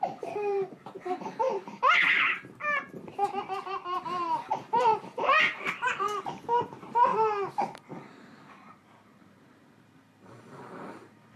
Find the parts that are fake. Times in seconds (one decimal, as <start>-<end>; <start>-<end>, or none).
0.0-1.5; 3.4-7.1; 8.5-11.4